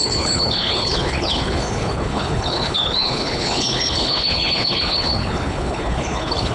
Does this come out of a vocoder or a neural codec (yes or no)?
yes